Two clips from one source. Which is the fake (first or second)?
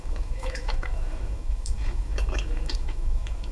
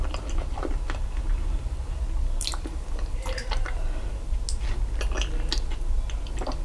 first